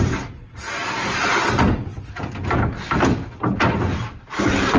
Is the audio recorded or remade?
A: recorded